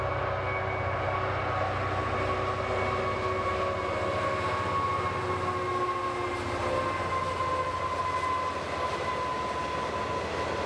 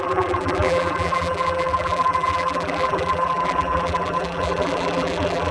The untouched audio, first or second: first